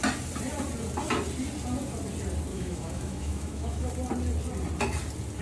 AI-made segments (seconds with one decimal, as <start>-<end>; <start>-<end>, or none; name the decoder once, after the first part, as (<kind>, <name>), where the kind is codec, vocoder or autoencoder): 2.5-3.9 (autoencoder, DAC-VAE)

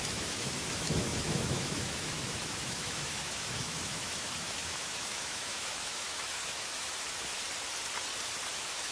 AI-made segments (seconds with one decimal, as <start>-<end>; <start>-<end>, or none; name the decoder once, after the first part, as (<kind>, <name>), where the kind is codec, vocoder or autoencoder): 0.0-7.4 (autoencoder, DAC-VAE); 8.5-8.9

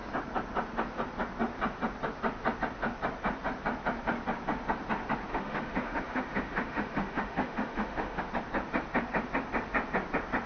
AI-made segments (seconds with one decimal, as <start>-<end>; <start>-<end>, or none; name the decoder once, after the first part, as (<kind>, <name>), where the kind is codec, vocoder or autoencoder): 5.3-8.2 (autoencoder, DAC-VAE)

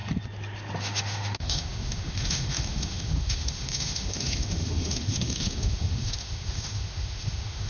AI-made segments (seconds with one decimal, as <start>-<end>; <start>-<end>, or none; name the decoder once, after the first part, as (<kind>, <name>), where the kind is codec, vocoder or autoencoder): 0.8-7.7 (autoencoder, DAC-VAE)

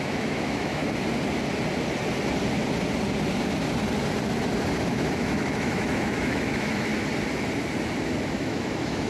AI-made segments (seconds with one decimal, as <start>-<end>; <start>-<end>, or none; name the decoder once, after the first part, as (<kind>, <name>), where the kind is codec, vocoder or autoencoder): 0.0-0.8 (autoencoder, DAC-VAE); 4.8-6.9; 8.4-9.1

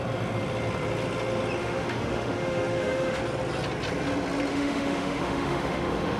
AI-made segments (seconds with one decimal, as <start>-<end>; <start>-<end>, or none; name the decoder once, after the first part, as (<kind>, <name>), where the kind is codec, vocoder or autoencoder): 1.6-3.2 (autoencoder, DAC-VAE); 4.5-6.2